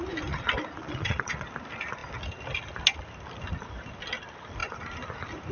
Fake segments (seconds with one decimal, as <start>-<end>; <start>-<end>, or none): 0.8-1.5

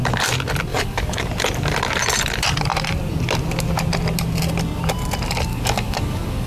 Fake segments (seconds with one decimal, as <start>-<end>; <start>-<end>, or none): 0.7-1.3; 5.5-6.5

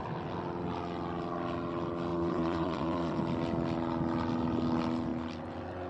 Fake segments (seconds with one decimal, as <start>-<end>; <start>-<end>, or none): 2.1-3.2